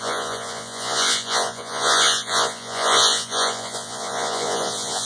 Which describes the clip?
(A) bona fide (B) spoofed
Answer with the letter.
B